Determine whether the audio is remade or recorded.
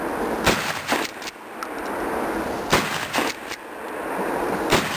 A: recorded